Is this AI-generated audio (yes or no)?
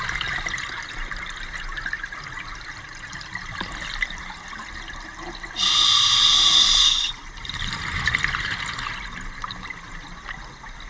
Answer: no